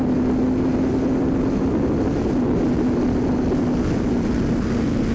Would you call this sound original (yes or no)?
yes